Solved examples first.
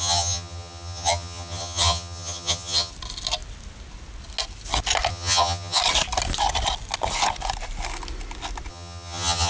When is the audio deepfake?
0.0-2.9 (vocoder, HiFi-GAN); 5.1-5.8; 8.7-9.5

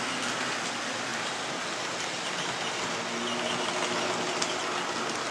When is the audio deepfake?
none

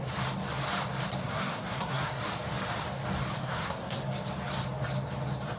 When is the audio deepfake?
1.2-2.2 (codec, SNAC); 3.4-4.0

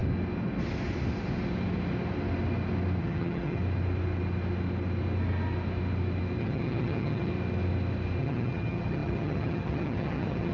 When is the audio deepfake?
3.0-3.6 (vocoder, HiFi-GAN); 6.4-7.3; 8.2-10.5

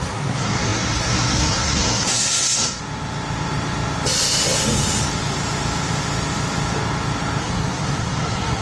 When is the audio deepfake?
0.0-2.8 (codec, SNAC); 7.4-8.6